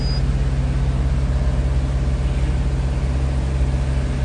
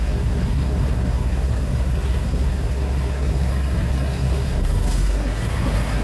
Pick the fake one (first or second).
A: second